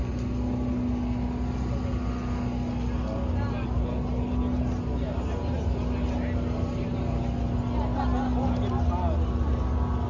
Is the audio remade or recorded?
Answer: recorded